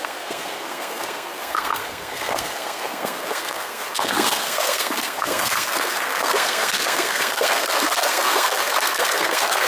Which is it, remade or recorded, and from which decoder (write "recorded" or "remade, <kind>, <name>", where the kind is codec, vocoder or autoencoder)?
remade, codec, SNAC